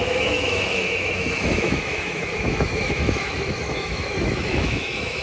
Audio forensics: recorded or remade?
remade